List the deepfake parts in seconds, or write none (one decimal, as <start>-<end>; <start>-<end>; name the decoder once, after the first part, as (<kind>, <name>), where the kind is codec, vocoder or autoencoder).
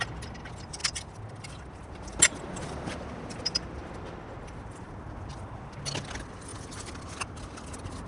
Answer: 3.8-5.0 (vocoder, BigVGAN v2)